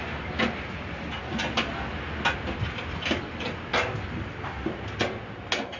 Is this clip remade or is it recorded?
recorded